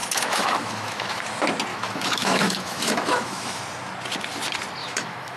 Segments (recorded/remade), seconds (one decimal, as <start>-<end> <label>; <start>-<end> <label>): 0.0-1.2 remade; 1.2-1.7 recorded; 1.7-3.6 remade; 3.6-4.8 recorded; 4.8-5.4 remade